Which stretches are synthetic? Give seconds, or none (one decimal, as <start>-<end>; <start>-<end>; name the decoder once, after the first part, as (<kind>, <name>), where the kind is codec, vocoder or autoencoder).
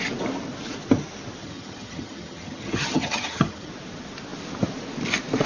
1.4-3.7 (vocoder, HiFi-GAN)